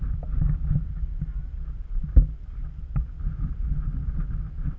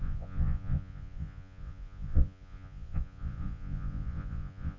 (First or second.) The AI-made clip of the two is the second